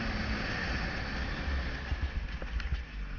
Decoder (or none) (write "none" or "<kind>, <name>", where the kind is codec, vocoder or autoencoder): none